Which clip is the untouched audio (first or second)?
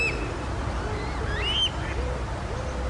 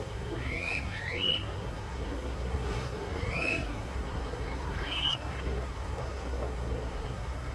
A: first